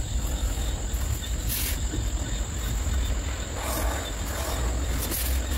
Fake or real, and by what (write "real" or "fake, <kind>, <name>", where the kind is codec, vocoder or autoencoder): real